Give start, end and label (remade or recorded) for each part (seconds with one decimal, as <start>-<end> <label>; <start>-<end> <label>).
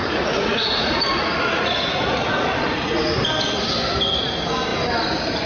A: 0.0-3.0 remade; 3.0-5.5 recorded